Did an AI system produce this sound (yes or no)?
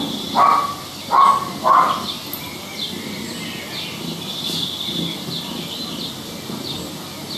no